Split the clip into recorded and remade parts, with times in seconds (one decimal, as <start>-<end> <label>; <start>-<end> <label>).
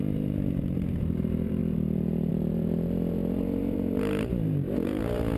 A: 0.0-5.4 remade